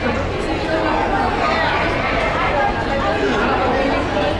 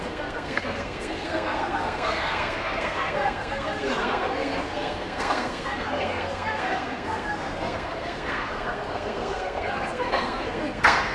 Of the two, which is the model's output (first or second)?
second